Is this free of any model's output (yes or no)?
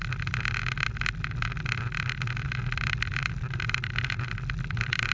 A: yes